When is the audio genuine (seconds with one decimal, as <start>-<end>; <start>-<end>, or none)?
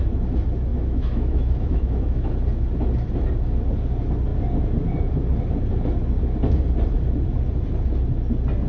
0.0-0.7; 2.3-8.7